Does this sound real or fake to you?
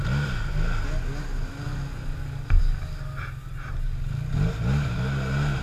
real